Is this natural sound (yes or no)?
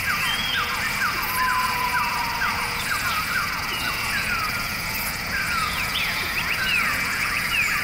no